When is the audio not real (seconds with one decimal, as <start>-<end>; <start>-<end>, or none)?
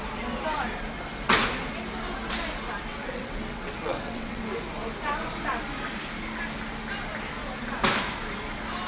2.9-4.4